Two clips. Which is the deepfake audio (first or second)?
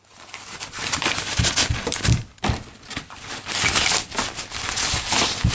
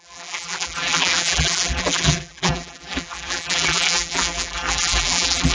second